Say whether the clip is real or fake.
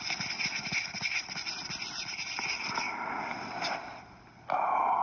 real